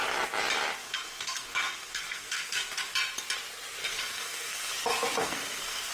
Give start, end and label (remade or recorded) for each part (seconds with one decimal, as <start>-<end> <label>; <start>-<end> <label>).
0.0-0.8 recorded; 0.8-2.9 remade; 2.9-3.8 recorded; 3.8-4.7 remade; 4.7-5.2 recorded; 5.2-5.9 remade

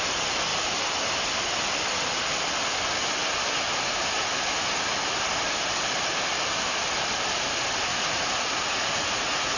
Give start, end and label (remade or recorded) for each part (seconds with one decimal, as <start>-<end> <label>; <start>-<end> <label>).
0.0-7.9 recorded; 7.9-9.6 remade

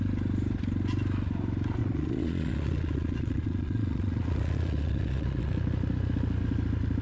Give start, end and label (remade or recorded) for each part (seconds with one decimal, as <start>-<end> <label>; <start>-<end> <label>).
0.0-1.8 recorded; 1.8-5.5 remade; 5.5-7.0 recorded

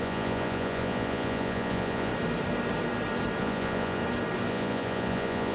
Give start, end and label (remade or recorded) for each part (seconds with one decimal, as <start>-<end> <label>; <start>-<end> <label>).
0.0-2.1 remade; 2.1-3.4 recorded; 3.4-4.0 remade; 4.0-4.5 recorded; 4.5-5.5 remade

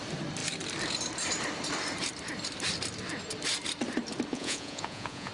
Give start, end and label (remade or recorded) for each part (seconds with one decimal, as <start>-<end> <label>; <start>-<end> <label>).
0.0-4.3 recorded; 4.3-5.3 remade

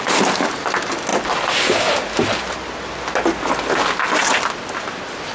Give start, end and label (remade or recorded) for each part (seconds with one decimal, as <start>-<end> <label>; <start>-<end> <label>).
0.0-5.3 recorded

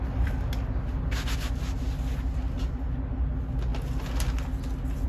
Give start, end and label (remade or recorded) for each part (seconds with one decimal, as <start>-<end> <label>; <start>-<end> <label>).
0.0-5.1 recorded